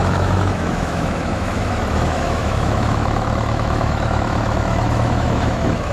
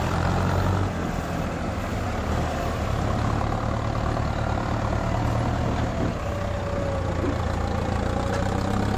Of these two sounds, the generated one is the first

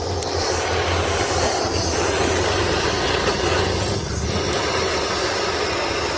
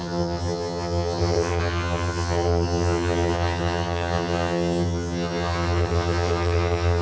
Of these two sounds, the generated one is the second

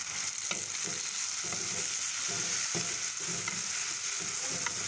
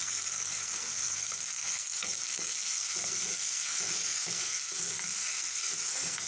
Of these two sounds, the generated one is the second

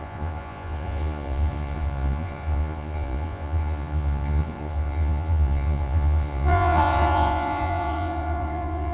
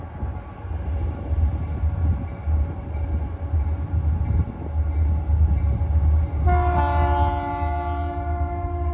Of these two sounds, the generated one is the first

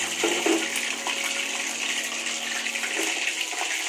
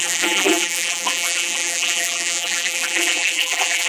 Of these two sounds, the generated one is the second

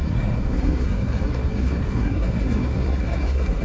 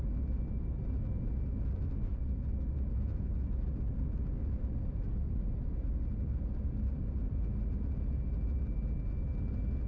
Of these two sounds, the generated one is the first